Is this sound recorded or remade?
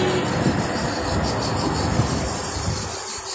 recorded